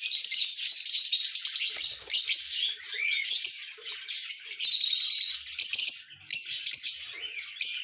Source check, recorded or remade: recorded